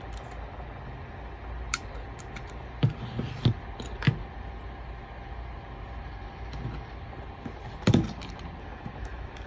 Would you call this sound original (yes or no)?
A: yes